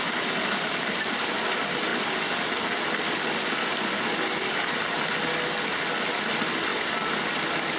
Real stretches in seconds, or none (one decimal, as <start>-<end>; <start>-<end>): 0.0-7.8